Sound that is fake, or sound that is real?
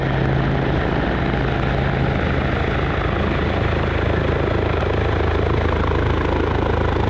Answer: real